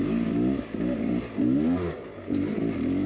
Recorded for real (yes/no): yes